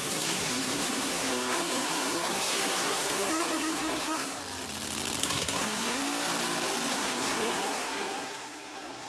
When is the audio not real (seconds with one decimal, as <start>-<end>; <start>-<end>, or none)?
0.0-4.4; 5.2-6.0; 6.9-9.1